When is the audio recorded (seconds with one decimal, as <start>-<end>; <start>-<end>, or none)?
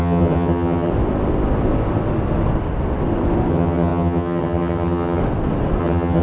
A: 0.9-3.5; 5.2-5.8